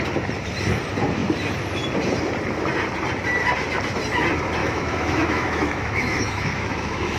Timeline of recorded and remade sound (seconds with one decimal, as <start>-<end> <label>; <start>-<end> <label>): 0.0-4.6 recorded; 4.6-7.2 remade